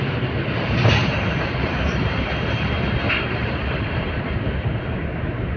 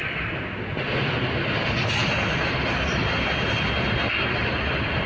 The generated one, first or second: first